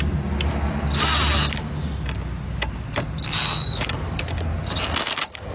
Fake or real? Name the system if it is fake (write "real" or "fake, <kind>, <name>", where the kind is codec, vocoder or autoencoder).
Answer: real